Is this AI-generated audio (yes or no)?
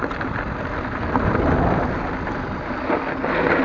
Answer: no